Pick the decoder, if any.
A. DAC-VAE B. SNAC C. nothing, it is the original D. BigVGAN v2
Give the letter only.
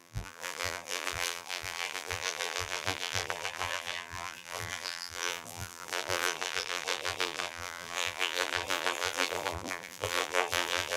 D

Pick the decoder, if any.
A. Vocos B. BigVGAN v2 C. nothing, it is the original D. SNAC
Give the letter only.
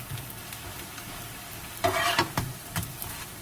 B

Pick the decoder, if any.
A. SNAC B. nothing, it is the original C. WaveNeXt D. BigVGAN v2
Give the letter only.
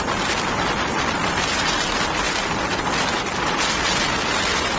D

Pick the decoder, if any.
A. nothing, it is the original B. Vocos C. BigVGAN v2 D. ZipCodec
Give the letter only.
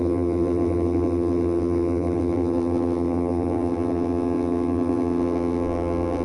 C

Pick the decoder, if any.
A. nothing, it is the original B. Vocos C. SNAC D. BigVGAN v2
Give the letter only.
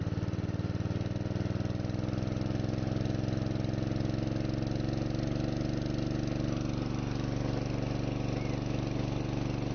A